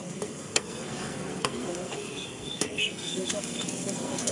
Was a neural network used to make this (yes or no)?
yes